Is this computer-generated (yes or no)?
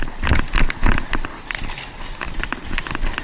no